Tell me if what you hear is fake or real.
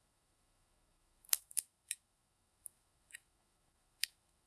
fake